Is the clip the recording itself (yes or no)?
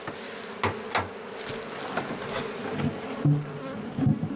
yes